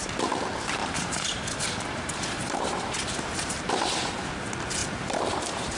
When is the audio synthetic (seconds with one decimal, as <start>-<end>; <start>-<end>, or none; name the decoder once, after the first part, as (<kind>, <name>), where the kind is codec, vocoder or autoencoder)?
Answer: 0.8-3.7 (vocoder, BigVGAN v2); 4.8-5.8